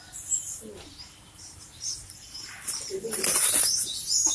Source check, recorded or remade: recorded